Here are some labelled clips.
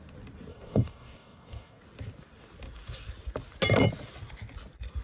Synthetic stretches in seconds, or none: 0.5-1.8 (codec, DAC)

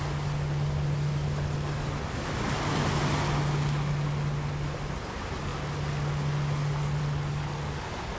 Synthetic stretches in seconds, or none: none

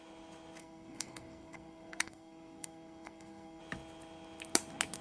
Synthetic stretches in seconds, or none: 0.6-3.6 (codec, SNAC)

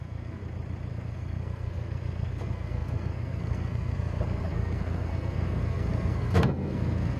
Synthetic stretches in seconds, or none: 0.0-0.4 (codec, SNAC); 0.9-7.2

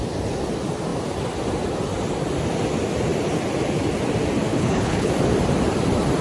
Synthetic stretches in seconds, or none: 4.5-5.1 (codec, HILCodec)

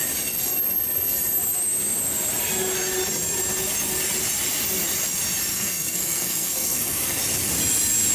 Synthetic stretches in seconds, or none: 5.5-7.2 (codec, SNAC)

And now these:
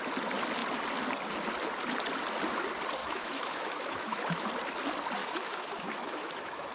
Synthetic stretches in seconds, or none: 3.0-4.5 (autoencoder, DAC-VAE); 5.2-6.7